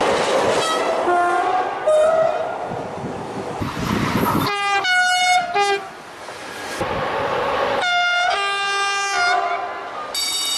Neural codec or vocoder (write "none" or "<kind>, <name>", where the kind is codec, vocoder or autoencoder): none